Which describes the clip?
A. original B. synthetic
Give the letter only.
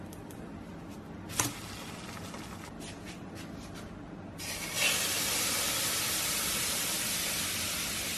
A